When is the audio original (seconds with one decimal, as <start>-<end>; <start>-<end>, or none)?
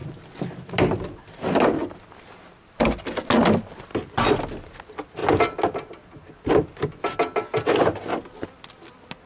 0.0-9.3